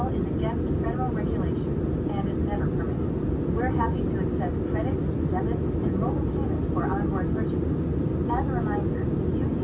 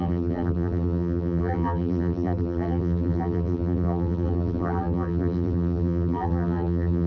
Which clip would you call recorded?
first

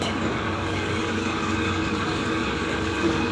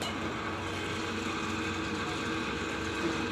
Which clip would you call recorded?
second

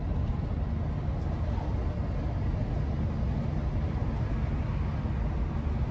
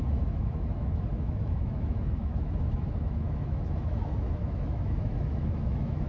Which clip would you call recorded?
first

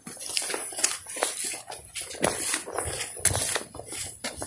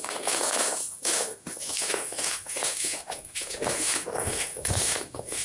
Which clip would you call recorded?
first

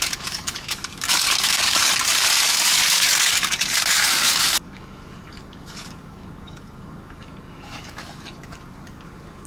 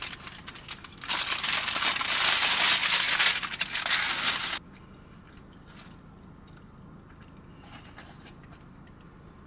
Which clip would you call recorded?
second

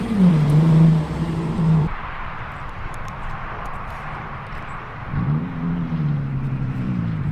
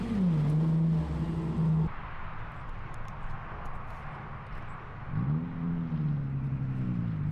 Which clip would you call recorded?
second